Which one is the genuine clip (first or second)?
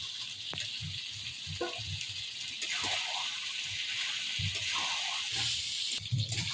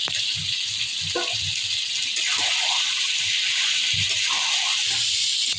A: first